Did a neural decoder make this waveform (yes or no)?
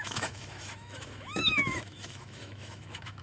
yes